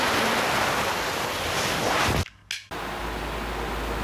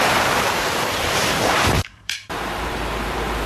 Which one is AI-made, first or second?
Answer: second